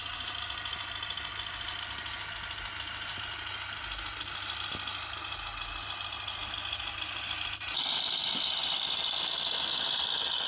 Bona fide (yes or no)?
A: yes